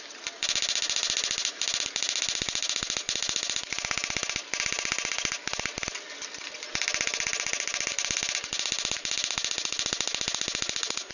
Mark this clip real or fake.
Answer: real